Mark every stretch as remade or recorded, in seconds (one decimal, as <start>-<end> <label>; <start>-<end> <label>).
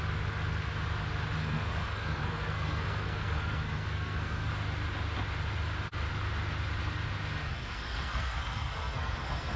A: 0.0-1.4 recorded; 1.4-4.5 remade; 4.5-7.4 recorded; 7.4-9.6 remade